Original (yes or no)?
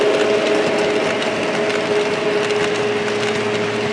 yes